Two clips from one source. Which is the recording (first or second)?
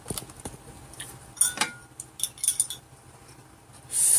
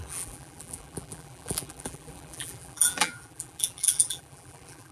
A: first